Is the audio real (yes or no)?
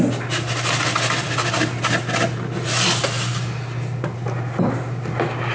yes